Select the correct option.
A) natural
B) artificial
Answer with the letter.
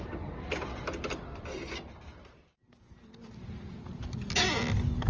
A